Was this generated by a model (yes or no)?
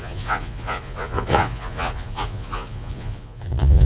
yes